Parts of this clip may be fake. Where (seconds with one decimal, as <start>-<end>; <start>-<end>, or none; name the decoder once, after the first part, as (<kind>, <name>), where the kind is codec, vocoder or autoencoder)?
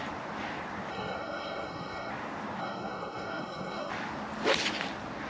0.9-2.1 (codec, SNAC); 2.6-3.9